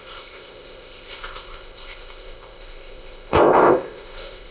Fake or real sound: fake